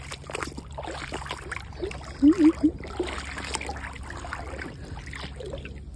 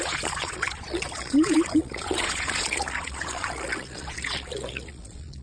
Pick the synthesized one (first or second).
second